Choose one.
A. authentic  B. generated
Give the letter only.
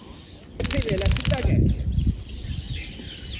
A